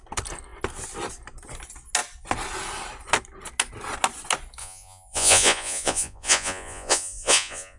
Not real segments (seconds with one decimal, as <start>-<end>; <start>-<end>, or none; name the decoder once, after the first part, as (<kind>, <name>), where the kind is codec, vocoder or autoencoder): 4.6-7.8 (vocoder, Vocos)